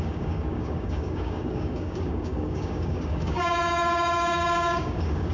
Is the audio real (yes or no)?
no